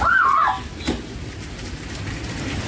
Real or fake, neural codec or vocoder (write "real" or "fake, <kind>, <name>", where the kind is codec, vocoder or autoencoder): real